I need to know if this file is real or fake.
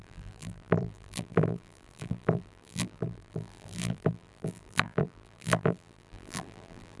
fake